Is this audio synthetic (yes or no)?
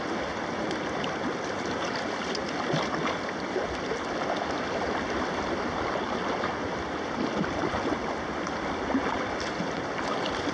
no